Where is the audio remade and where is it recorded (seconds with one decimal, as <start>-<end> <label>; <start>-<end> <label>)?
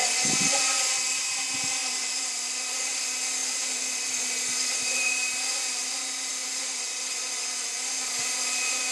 0.0-1.8 recorded; 1.8-2.6 remade; 2.6-3.4 recorded; 3.4-5.8 remade; 5.8-6.3 recorded; 6.3-7.2 remade; 7.2-8.9 recorded